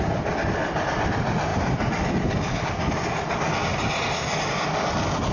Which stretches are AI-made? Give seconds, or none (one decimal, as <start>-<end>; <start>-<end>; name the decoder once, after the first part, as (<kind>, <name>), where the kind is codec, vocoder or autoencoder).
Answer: none